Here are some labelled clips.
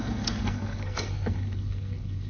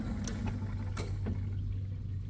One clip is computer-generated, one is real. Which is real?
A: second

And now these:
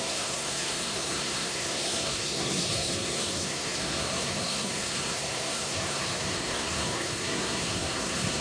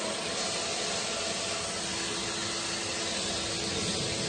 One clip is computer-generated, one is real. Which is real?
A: second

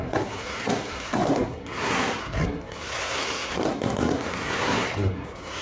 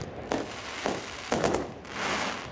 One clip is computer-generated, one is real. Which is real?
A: second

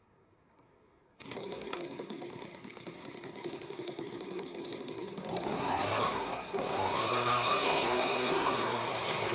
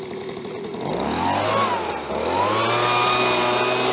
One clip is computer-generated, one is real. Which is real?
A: second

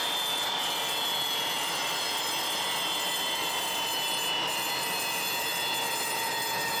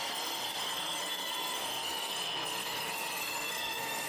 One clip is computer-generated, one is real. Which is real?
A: first